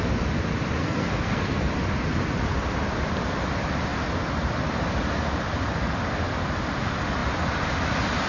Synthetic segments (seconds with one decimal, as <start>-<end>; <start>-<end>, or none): 0.8-1.7